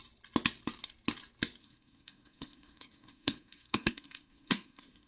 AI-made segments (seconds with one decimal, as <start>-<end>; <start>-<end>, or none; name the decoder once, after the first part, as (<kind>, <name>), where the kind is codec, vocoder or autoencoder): 1.6-5.1 (codec, SNAC)